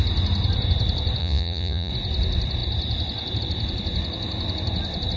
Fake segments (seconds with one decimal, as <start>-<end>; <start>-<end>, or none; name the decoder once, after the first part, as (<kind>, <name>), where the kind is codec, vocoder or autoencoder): 1.2-1.9 (vocoder, Vocos)